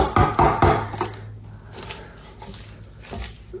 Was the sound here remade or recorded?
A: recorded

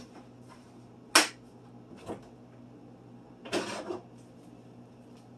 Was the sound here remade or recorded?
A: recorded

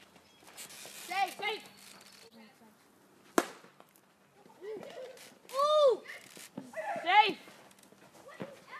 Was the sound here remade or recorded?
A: recorded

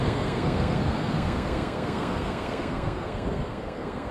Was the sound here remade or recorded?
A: remade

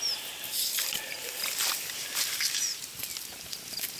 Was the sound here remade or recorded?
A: remade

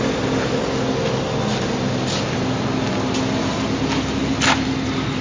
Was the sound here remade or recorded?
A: recorded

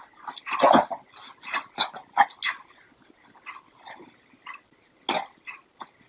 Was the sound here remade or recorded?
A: recorded